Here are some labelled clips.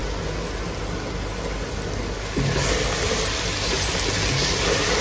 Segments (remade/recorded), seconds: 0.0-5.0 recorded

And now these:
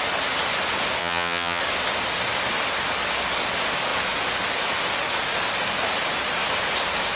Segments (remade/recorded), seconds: 0.0-1.0 recorded; 1.0-1.6 remade; 1.6-7.2 recorded